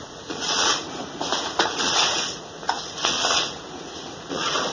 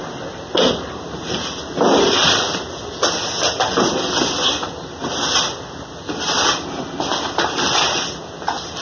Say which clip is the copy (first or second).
first